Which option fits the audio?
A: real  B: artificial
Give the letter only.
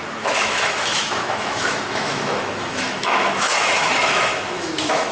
B